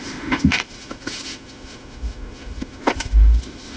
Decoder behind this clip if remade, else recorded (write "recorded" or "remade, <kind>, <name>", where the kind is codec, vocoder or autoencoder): remade, autoencoder, DAC-VAE